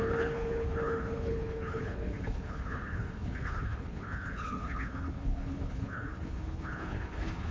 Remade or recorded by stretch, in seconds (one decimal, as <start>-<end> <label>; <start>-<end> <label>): 0.0-7.5 remade